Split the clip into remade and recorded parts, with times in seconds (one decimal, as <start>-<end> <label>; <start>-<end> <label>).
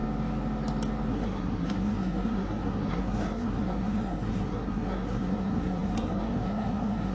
0.0-1.1 recorded; 1.1-7.1 remade